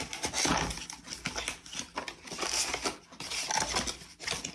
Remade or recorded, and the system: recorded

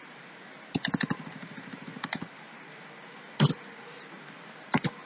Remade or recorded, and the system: recorded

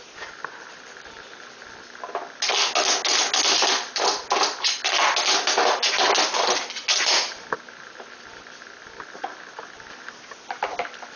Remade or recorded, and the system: recorded